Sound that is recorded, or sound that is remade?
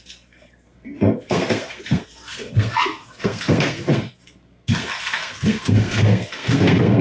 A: remade